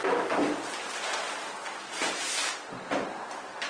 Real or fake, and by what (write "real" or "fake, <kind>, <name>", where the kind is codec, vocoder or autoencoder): fake, vocoder, BigVGAN v2